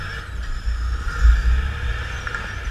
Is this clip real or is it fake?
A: real